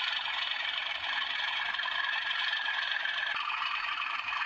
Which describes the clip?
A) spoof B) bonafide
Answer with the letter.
A